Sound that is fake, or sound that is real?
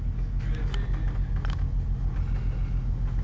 real